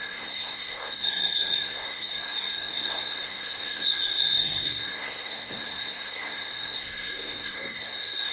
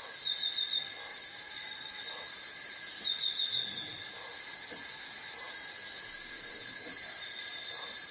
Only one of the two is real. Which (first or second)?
second